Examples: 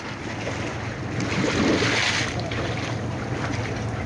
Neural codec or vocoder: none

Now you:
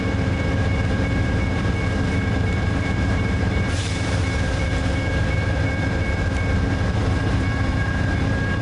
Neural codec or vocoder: vocoder, BigVGAN v2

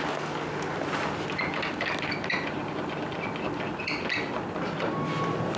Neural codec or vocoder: none